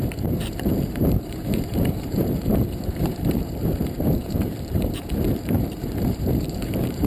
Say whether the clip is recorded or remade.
remade